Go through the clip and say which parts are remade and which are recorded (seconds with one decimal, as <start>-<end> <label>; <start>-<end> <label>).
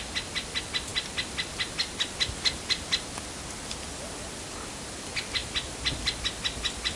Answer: 0.0-7.0 recorded